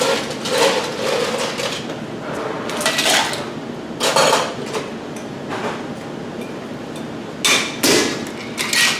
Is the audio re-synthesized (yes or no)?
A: no